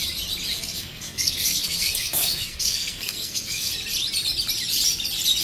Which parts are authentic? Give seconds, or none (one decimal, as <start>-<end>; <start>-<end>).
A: 0.0-0.5; 3.7-5.4